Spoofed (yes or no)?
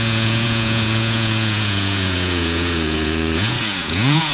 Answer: yes